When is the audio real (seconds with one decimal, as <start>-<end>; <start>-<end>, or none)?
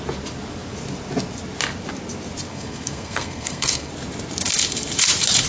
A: 0.0-2.5; 3.9-5.5